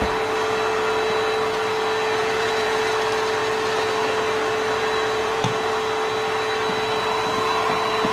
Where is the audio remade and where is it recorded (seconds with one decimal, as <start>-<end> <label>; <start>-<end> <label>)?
0.0-2.2 recorded; 2.2-2.8 remade; 2.8-5.2 recorded; 5.2-5.7 remade; 5.7-8.1 recorded